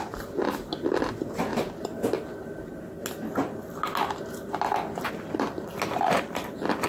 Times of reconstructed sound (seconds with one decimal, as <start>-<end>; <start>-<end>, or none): none

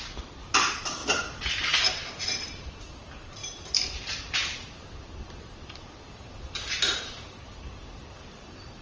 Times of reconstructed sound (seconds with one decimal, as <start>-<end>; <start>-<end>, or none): 0.0-8.8

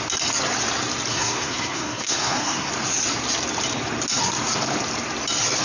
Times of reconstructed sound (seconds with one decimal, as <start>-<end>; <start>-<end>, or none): 1.1-2.7

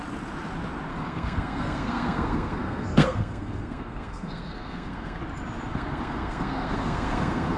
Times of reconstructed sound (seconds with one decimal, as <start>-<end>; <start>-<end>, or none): 0.9-5.2; 5.7-7.6

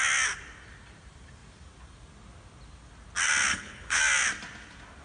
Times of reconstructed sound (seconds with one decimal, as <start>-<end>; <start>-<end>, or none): 3.5-4.0

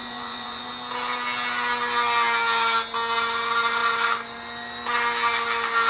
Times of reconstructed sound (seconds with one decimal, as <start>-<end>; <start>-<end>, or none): 0.0-0.7